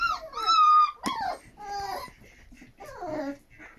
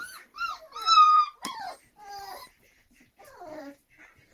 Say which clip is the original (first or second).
first